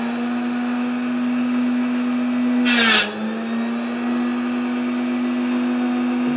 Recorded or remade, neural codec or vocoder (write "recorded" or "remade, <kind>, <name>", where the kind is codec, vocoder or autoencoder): recorded